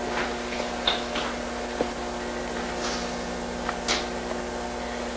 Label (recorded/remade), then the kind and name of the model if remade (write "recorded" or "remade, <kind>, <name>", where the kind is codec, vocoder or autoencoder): recorded